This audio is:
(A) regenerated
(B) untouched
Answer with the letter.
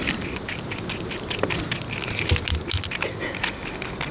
B